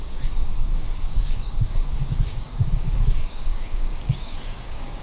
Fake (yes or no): yes